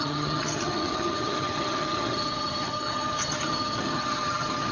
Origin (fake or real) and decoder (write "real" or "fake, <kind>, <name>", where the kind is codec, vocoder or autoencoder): fake, vocoder, HiFi-GAN